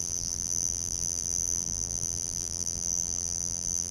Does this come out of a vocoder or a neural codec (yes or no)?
yes